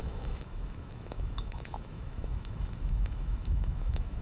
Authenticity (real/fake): fake